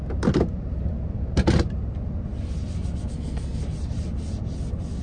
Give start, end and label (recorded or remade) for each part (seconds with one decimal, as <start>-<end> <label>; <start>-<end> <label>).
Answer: 0.0-3.1 recorded; 3.1-3.6 remade; 3.6-5.0 recorded